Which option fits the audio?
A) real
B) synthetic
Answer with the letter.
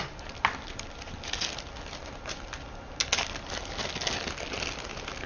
A